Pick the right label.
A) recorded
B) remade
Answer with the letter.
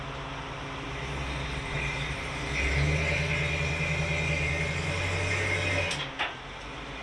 A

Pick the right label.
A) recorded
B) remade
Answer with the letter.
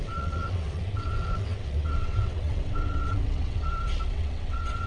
B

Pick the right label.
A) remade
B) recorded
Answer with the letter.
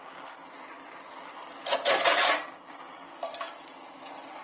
B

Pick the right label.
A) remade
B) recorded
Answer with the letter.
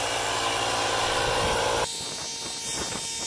B